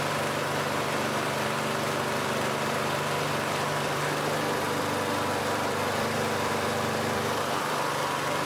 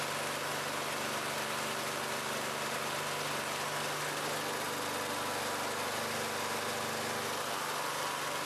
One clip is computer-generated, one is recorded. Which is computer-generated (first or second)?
first